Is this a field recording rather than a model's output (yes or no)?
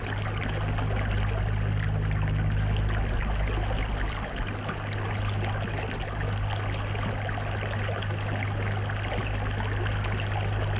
yes